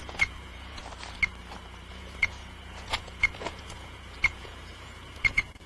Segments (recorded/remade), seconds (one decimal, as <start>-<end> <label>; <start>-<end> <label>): 0.0-0.8 remade; 0.8-1.9 recorded; 1.9-5.7 remade